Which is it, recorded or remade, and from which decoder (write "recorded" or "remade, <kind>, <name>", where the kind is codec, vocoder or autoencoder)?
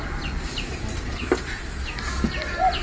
recorded